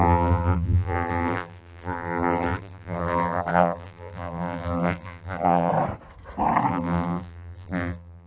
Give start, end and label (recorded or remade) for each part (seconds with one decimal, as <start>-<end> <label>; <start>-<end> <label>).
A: 0.0-5.7 remade; 5.7-6.7 recorded; 6.7-8.3 remade